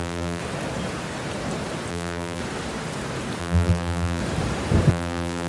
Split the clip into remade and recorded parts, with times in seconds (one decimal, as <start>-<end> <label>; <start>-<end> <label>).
0.0-0.4 remade; 0.4-1.9 recorded; 1.9-2.4 remade; 2.4-3.4 recorded; 3.4-4.2 remade; 4.2-4.9 recorded; 4.9-5.5 remade